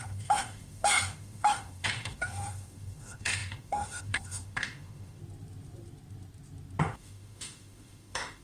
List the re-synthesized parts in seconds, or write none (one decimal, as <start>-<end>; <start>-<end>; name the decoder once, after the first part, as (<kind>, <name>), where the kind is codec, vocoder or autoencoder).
0.0-5.2 (autoencoder, DAC-VAE); 6.8-8.4